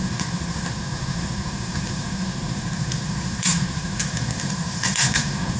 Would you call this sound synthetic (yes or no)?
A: yes